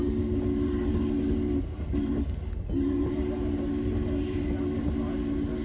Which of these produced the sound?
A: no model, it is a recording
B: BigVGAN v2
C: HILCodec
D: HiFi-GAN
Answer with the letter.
A